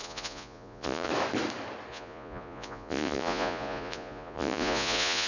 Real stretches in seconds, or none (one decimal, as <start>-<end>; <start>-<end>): 1.1-1.9